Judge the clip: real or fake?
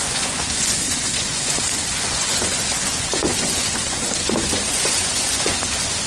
fake